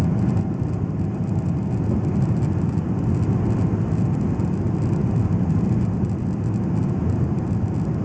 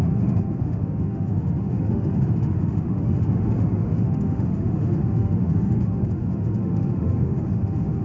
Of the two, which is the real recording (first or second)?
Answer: first